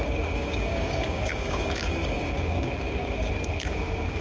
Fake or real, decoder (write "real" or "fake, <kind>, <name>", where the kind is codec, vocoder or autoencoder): fake, codec, DAC